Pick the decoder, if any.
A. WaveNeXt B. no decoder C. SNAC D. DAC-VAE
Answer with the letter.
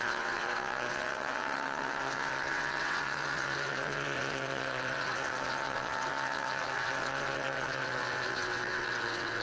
A